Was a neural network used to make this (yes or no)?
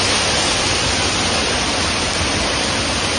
no